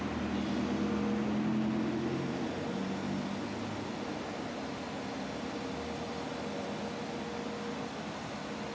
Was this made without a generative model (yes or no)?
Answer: yes